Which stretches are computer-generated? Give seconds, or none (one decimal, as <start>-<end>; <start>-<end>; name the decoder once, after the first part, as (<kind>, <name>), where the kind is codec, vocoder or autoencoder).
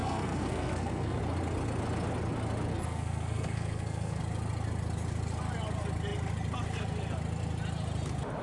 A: 0.0-1.2 (codec, SNAC); 2.7-4.2